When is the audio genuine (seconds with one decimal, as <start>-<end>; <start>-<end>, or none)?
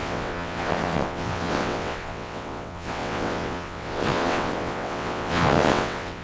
none